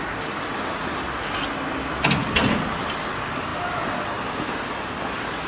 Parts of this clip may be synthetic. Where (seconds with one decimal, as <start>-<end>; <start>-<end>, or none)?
none